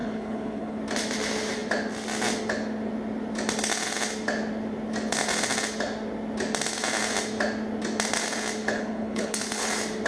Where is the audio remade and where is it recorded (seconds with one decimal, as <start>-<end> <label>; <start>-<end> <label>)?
0.0-0.8 remade; 0.8-8.6 recorded; 8.6-9.7 remade; 9.7-10.1 recorded